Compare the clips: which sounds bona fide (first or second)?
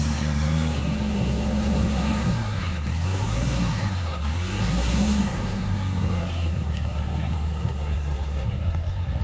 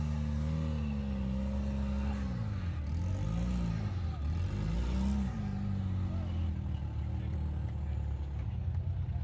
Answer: second